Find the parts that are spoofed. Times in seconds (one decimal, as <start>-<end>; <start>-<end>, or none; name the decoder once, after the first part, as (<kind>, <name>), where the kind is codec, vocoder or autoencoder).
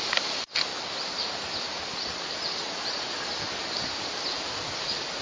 none